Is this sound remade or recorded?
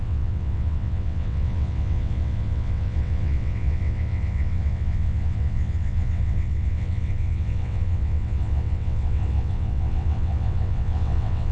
remade